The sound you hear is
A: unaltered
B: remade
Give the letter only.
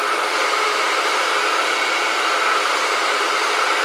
B